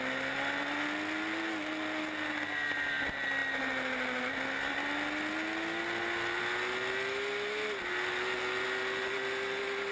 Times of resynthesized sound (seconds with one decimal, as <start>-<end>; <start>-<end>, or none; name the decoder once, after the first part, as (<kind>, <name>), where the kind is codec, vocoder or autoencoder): none